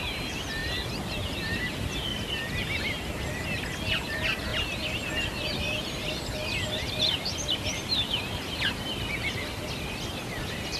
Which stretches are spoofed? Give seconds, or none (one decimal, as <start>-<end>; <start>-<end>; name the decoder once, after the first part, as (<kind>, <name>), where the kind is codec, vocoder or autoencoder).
2.1-3.1 (vocoder, BigVGAN v2); 4.5-5.1; 6.4-8.2